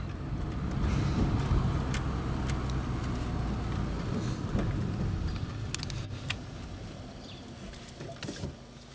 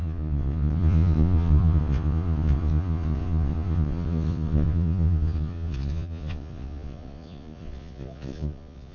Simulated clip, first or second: second